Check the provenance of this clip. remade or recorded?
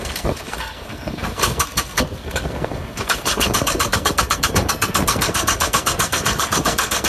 remade